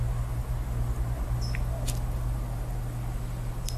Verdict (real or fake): real